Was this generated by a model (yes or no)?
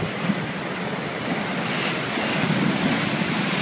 no